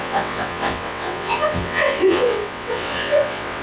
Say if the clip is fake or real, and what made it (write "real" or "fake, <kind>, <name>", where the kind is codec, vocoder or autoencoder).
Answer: fake, vocoder, WaveNeXt